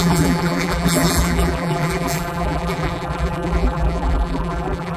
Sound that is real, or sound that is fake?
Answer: fake